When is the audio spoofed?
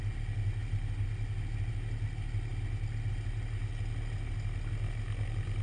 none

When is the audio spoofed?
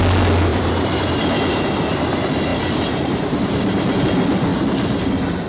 0.5-1.2 (vocoder, BigVGAN v2); 2.5-4.0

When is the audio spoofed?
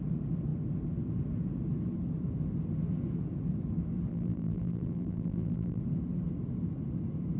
4.1-5.8 (vocoder, BigVGAN v2)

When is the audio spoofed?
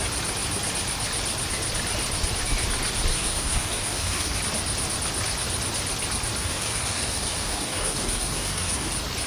3.1-4.4 (codec, DAC); 6.4-8.9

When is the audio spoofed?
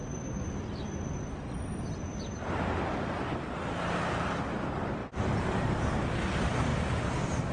none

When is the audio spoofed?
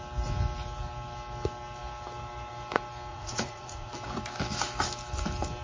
3.1-3.9 (vocoder, Vocos)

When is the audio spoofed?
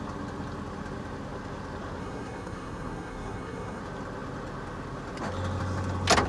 2.0-3.8 (codec, SNAC)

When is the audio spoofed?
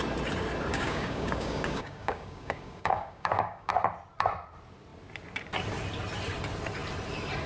0.7-3.7 (codec, DAC)